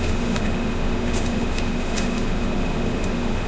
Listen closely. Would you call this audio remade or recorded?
remade